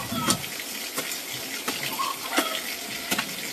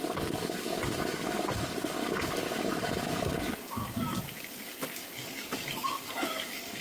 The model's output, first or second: second